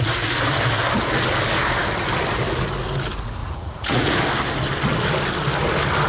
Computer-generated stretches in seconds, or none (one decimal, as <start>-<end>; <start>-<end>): 3.4-4.2